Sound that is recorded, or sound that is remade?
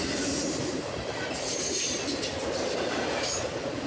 recorded